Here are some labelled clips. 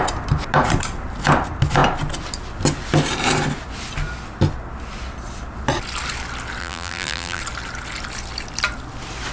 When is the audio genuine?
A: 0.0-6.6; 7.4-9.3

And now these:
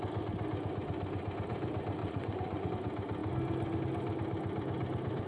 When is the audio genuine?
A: 0.0-2.0; 2.7-5.3

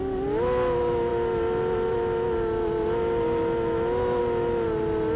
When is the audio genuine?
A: 0.0-5.2

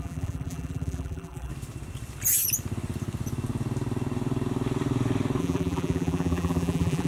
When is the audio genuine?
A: 1.5-5.4

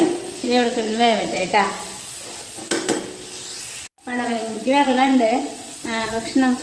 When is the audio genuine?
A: 2.6-3.6

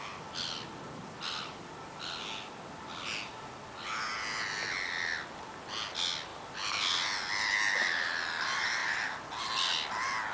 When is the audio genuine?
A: 0.0-10.3

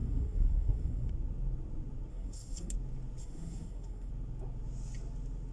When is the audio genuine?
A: 1.1-2.1; 2.7-3.2; 4.1-5.5

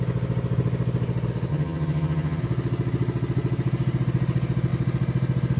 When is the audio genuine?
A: 0.0-1.5; 2.4-5.6